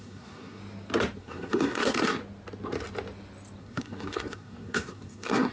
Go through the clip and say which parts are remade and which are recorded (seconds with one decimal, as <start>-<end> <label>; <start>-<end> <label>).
0.0-0.6 remade; 0.6-1.2 recorded; 1.2-2.2 remade; 2.2-3.6 recorded; 3.6-5.5 remade